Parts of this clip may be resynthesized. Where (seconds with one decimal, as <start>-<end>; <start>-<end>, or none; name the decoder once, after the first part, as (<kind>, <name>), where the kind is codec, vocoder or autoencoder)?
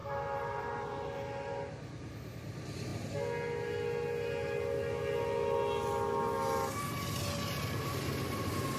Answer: none